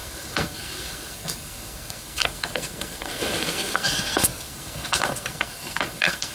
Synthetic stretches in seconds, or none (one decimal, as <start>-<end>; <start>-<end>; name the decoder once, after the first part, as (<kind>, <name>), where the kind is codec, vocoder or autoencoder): 0.0-6.3 (codec, SNAC)